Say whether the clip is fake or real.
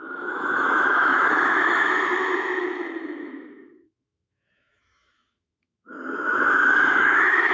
fake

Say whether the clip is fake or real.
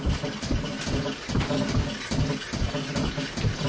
real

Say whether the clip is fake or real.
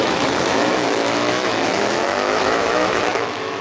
fake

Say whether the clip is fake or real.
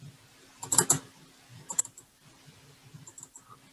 real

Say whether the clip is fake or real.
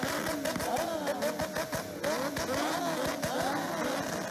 real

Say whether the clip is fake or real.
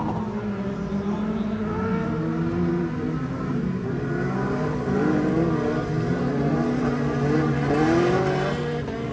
real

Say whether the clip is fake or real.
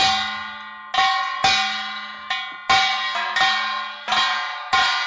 real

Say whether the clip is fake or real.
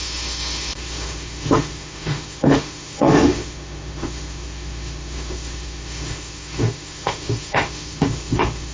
fake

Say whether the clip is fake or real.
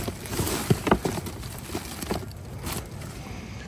real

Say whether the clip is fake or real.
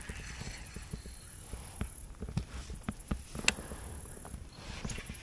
real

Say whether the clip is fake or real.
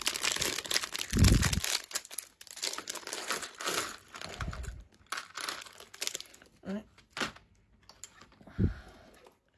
real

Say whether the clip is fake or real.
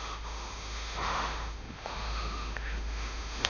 fake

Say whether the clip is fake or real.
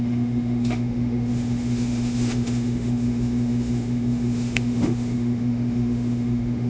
fake